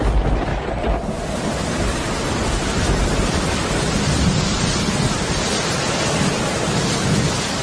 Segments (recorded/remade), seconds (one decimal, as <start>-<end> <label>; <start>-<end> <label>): 0.0-0.5 recorded; 0.5-4.7 remade; 4.7-7.6 recorded